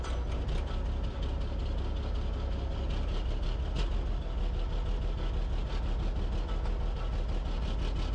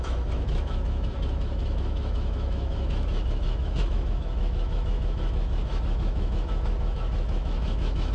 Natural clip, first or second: first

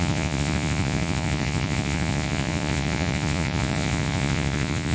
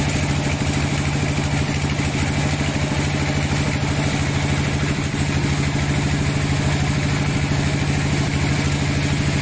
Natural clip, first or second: second